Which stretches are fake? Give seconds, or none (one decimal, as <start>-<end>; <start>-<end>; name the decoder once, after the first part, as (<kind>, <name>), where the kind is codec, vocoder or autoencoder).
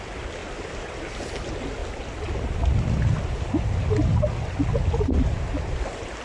1.8-5.5 (vocoder, BigVGAN v2)